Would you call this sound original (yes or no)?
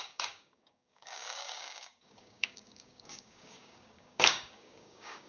no